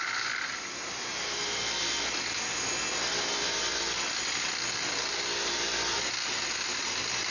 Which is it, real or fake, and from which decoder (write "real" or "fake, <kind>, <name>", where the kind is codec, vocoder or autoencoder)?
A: real